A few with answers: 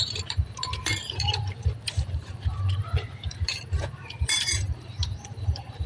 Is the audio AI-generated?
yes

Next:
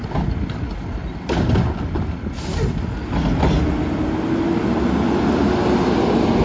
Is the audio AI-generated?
no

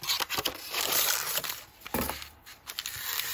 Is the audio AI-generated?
no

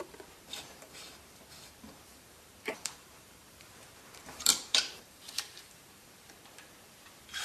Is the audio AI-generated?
yes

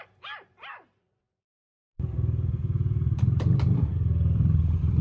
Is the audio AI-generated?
yes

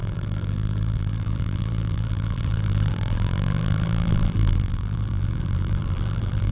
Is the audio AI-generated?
yes